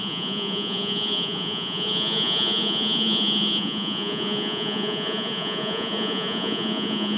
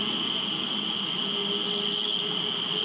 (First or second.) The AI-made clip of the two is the first